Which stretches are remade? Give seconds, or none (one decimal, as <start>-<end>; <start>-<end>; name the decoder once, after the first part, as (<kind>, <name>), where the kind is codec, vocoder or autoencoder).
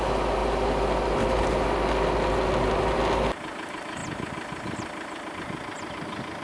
none